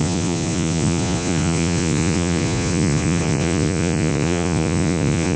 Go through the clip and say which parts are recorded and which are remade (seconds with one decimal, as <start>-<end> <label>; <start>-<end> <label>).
0.0-5.4 remade